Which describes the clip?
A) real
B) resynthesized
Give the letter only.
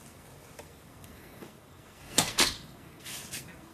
B